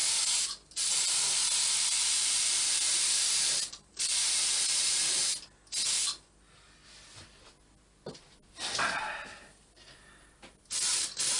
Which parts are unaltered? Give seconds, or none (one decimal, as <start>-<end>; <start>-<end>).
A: 5.3-10.6